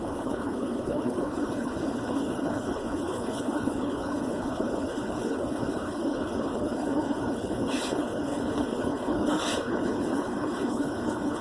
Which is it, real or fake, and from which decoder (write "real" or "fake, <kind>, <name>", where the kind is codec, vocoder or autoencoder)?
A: fake, codec, HILCodec